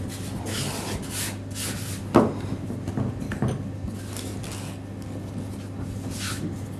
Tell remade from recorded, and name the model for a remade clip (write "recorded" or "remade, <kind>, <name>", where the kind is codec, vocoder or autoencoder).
recorded